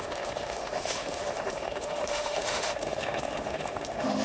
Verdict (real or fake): fake